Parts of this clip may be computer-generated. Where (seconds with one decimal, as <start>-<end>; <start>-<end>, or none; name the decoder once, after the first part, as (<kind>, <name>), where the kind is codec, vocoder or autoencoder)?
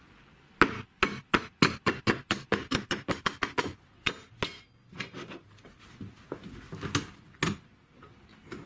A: none